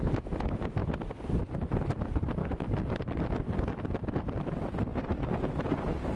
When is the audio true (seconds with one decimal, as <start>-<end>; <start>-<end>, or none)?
0.0-2.4; 3.0-6.2